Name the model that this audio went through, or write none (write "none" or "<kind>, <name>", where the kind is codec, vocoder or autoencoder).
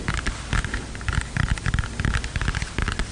none